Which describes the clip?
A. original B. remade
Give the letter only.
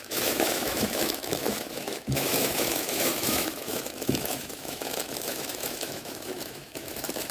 B